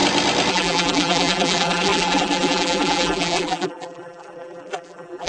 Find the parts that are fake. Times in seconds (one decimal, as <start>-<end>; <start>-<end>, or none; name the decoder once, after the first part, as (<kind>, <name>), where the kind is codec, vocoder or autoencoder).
0.5-5.3 (vocoder, BigVGAN v2)